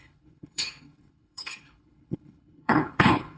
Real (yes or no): no